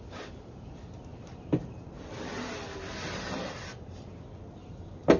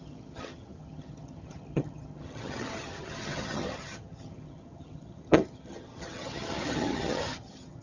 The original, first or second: first